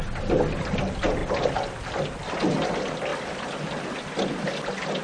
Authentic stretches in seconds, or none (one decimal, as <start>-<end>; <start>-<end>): 0.0-5.0